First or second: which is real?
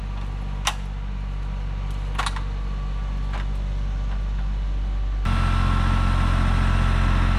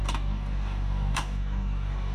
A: first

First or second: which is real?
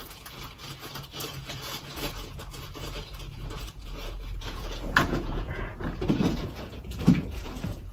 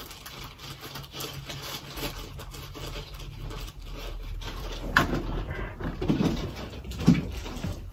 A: second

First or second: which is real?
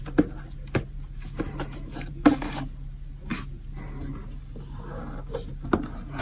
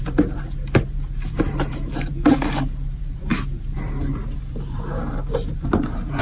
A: first